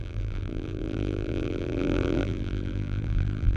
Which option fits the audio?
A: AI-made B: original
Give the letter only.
A